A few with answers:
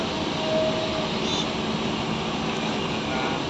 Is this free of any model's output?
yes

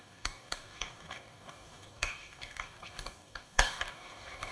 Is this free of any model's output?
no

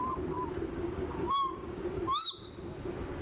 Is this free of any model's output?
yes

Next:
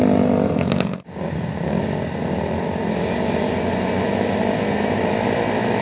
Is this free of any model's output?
yes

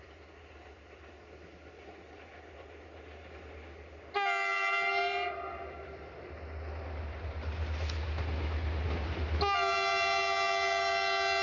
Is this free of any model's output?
yes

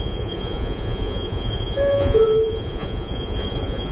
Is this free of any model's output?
no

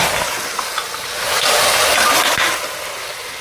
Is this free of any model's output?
yes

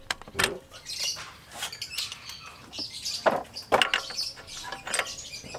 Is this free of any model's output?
yes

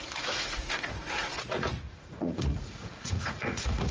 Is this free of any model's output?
no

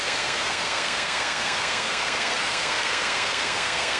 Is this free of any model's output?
no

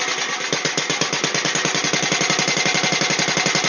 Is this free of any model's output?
yes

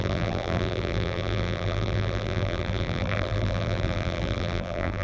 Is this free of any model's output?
no